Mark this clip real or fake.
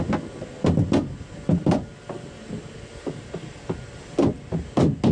real